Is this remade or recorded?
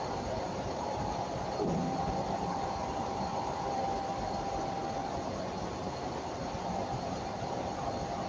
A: remade